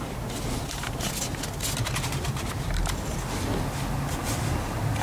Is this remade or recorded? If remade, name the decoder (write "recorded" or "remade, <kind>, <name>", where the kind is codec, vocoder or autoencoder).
recorded